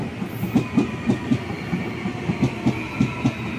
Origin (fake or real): real